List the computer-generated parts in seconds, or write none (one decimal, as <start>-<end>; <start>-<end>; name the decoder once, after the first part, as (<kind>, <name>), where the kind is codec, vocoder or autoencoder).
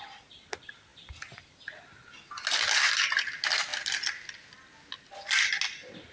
none